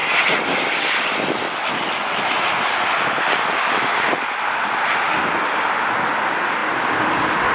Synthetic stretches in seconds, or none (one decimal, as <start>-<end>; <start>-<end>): none